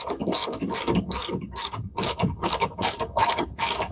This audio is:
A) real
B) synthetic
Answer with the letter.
B